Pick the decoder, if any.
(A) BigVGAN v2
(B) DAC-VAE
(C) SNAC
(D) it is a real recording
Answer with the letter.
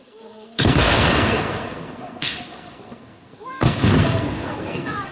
C